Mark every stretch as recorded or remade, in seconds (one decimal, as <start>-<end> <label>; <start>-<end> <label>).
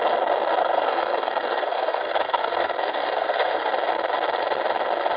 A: 0.0-0.6 recorded; 0.6-3.7 remade; 3.7-5.2 recorded